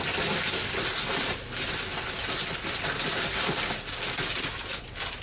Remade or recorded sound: recorded